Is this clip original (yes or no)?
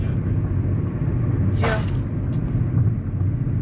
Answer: yes